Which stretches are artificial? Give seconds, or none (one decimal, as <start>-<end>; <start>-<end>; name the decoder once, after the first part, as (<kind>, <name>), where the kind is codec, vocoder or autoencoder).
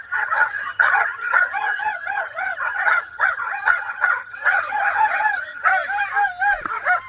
0.0-5.7 (vocoder, HiFi-GAN)